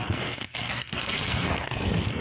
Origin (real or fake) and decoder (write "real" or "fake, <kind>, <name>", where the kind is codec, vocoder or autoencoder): fake, codec, SNAC